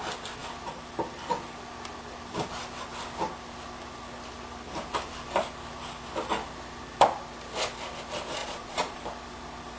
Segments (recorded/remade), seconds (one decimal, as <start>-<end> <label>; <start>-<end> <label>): 0.0-8.4 recorded; 8.4-9.0 remade; 9.0-9.8 recorded